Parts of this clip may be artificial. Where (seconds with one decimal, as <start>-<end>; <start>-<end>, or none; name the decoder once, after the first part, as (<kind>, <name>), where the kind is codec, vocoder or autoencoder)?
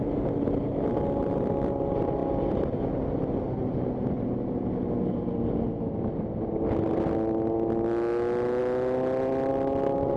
none